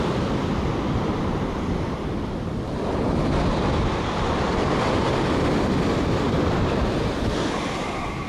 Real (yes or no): yes